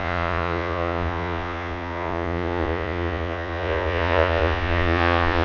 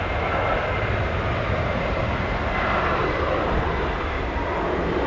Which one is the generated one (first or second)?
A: first